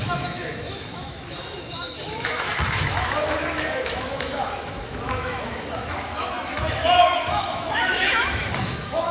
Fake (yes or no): yes